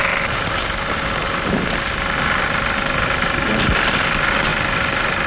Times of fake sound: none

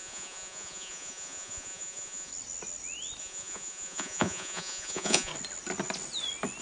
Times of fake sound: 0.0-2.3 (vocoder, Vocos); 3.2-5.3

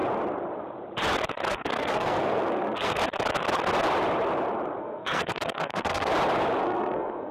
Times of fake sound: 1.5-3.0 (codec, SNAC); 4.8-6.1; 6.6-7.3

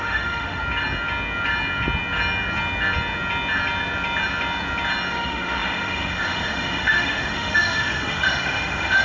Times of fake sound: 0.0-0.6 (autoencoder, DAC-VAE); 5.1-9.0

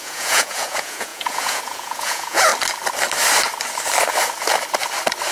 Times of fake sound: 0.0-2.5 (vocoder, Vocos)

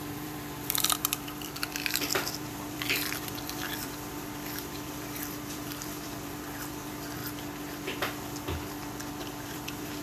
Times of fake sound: 0.0-7.2 (vocoder, BigVGAN v2); 9.1-10.0

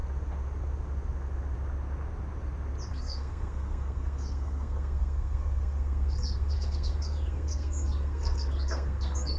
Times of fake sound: 2.9-9.4 (codec, SNAC)